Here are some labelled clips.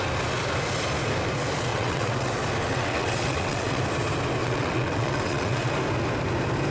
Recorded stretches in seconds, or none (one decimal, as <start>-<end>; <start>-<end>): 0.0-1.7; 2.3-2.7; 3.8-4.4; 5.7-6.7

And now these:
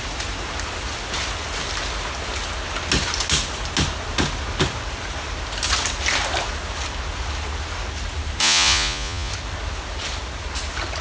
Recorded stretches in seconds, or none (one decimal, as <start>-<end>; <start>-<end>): 0.0-8.4; 9.3-11.0

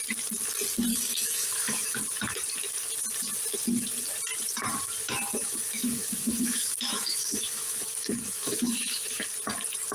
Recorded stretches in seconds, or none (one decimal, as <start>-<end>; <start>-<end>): 0.0-0.9; 2.0-5.4; 9.3-9.9